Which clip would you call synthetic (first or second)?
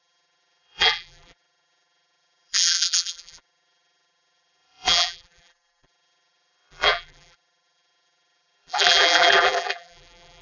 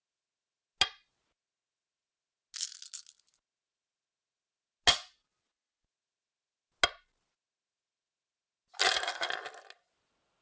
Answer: first